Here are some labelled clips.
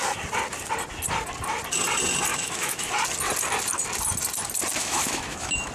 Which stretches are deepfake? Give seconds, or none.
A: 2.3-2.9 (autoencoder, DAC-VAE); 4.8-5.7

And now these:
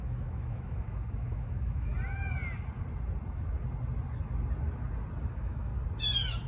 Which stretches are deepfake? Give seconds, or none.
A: 0.0-1.9 (autoencoder, DAC-VAE); 5.3-5.7

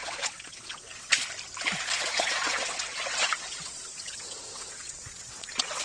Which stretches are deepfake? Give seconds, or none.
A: 0.0-1.2 (vocoder, WaveNeXt); 2.1-5.8

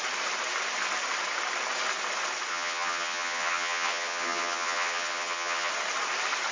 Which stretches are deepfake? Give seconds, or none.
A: 2.5-5.7 (vocoder, HiFi-GAN)

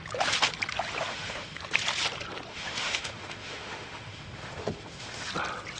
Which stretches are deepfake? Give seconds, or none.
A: 1.1-1.6 (autoencoder, DAC-VAE); 2.5-5.3

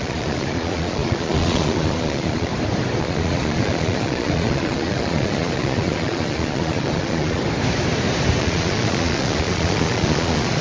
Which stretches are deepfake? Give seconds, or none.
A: 0.0-2.5 (vocoder, Vocos); 3.0-7.4; 8.4-10.6